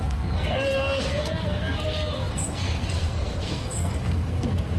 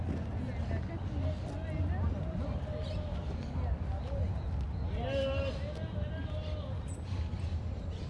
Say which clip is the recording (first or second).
second